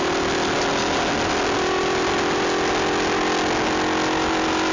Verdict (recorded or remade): recorded